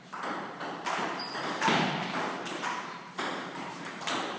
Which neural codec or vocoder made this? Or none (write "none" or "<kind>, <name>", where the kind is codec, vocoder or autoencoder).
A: vocoder, BigVGAN v2